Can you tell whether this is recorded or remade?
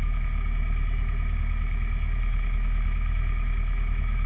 remade